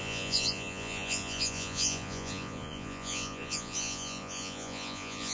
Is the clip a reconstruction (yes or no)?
yes